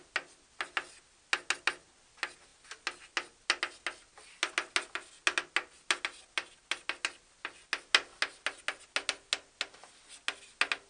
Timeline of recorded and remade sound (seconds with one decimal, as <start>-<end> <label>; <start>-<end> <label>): 0.0-10.9 recorded